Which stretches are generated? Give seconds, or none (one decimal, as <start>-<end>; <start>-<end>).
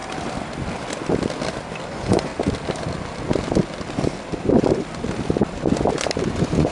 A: 1.9-2.3; 6.3-6.7